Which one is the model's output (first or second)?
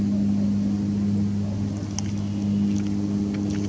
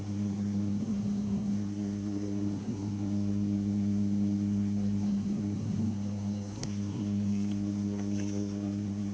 second